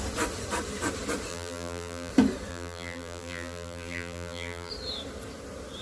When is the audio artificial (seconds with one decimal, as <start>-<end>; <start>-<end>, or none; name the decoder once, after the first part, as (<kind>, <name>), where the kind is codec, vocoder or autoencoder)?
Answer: 1.3-2.1 (vocoder, BigVGAN v2); 2.5-4.7